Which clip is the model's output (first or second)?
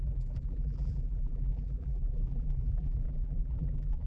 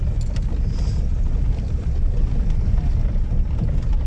first